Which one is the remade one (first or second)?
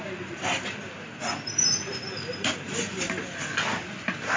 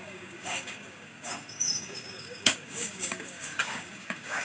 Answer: second